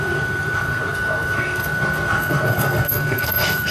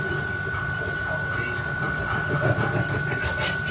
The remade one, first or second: first